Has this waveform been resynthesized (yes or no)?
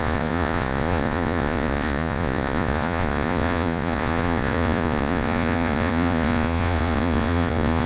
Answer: yes